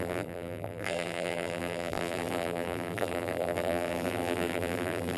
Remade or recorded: remade